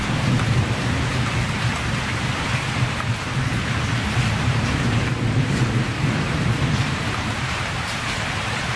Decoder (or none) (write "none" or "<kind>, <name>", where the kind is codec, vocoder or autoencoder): vocoder, BigVGAN v2